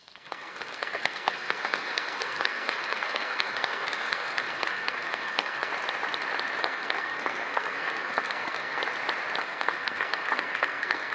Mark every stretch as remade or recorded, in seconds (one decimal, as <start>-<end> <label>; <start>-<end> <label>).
0.0-5.7 remade; 5.7-6.6 recorded; 6.6-8.8 remade; 8.8-9.4 recorded; 9.4-11.1 remade